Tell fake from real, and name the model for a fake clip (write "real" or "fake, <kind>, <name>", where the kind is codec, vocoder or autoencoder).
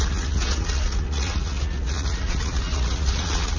fake, vocoder, Vocos